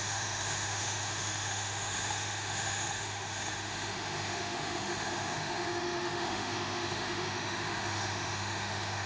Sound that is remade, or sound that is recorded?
remade